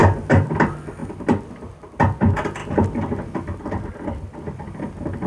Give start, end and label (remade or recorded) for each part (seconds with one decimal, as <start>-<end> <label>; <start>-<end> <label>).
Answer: 0.0-1.0 recorded; 1.0-2.2 remade; 2.2-2.6 recorded; 2.6-3.9 remade; 3.9-5.3 recorded

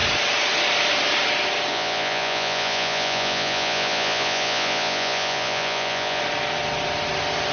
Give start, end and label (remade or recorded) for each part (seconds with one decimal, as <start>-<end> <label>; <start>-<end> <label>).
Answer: 0.0-1.7 recorded; 1.7-6.2 remade; 6.2-7.5 recorded

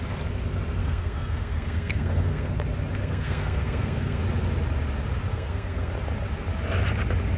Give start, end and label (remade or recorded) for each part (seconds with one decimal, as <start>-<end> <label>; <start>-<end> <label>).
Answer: 0.0-0.8 recorded; 0.8-2.5 remade; 2.5-3.0 recorded; 3.0-4.2 remade; 4.2-5.3 recorded; 5.3-5.9 remade; 5.9-7.4 recorded

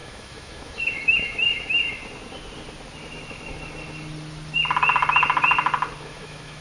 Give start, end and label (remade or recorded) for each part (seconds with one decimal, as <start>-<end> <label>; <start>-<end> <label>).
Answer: 0.0-2.0 remade; 2.0-6.0 recorded; 6.0-6.6 remade